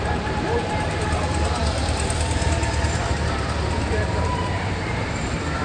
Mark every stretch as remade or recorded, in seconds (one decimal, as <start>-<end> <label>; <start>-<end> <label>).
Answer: 0.0-5.6 remade